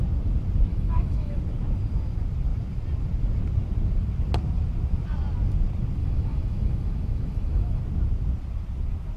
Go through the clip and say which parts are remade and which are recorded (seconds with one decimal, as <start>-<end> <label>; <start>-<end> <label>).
0.0-0.7 recorded; 0.7-1.4 remade; 1.4-6.0 recorded; 6.0-7.8 remade; 7.8-9.2 recorded